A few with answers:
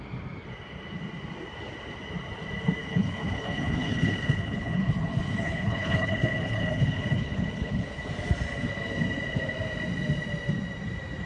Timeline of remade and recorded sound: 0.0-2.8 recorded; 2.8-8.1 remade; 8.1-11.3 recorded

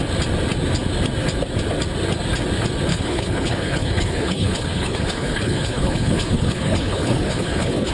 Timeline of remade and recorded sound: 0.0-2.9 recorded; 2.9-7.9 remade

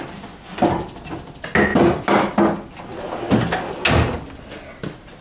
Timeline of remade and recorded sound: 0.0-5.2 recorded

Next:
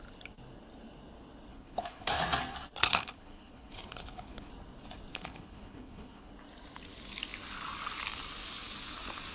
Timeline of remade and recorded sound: 0.0-1.5 recorded; 1.5-2.2 remade; 2.2-2.8 recorded; 2.8-4.5 remade; 4.5-5.1 recorded; 5.1-6.3 remade; 6.3-9.3 recorded

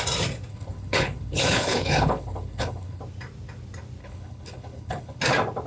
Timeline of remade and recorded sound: 0.0-0.5 recorded; 0.5-3.0 remade; 3.0-4.0 recorded; 4.0-5.2 remade; 5.2-5.7 recorded